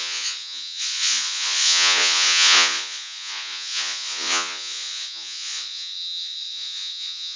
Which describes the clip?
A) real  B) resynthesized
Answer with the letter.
B